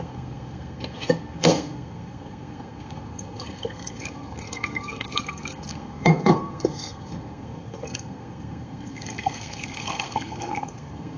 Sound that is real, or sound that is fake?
fake